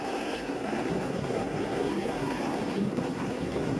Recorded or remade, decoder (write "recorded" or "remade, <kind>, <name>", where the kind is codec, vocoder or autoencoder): remade, codec, SNAC